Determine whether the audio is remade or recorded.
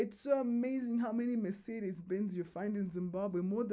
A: recorded